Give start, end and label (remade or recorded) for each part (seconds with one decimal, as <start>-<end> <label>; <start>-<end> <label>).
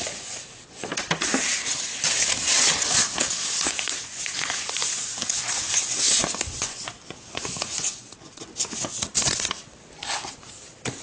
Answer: 0.0-0.9 remade; 0.9-3.7 recorded; 3.7-8.5 remade; 8.5-11.0 recorded